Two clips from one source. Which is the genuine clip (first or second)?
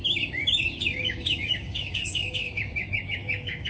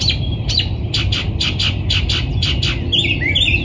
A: second